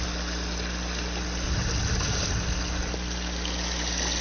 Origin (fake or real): real